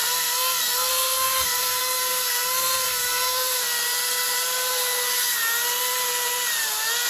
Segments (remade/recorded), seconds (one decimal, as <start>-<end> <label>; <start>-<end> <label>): 0.0-3.6 remade; 3.6-7.1 recorded